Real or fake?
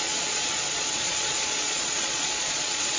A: fake